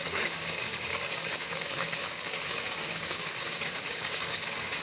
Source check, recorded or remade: remade